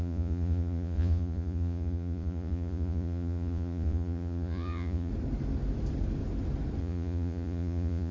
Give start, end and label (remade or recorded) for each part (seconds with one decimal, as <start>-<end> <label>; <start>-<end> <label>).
0.0-5.1 remade; 5.1-6.8 recorded; 6.8-8.1 remade